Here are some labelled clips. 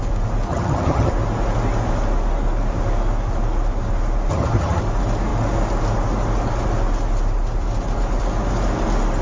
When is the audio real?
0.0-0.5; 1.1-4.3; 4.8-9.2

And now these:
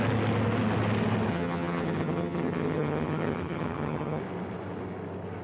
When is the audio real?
0.0-1.3; 4.2-5.4

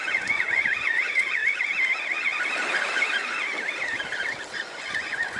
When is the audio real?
1.4-4.6

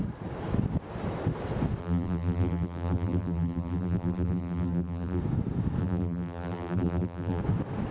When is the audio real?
0.0-1.8; 5.2-5.8; 7.4-7.9

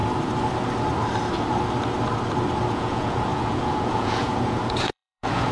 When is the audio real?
0.0-2.7

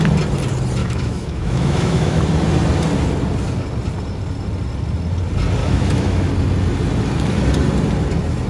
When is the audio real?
0.0-0.8; 2.2-5.6; 6.3-8.5

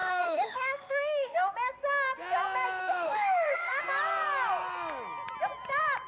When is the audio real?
1.5-2.8; 3.8-6.1